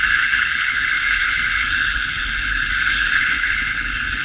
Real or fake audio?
fake